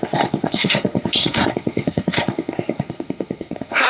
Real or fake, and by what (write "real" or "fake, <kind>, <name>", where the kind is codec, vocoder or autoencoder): fake, codec, SNAC